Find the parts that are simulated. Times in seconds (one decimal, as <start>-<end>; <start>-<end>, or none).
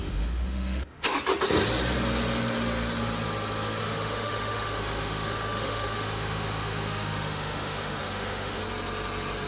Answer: 0.0-1.2; 3.8-8.6